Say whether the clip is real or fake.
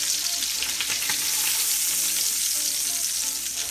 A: real